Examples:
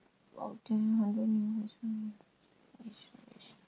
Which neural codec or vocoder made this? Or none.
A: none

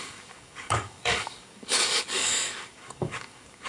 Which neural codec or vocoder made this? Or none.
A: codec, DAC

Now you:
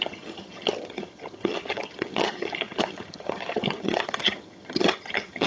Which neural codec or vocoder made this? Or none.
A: vocoder, HiFi-GAN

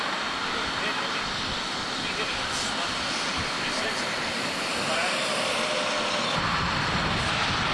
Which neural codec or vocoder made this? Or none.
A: none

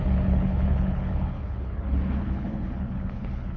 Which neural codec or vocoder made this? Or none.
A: codec, HILCodec